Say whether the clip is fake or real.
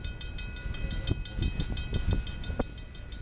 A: real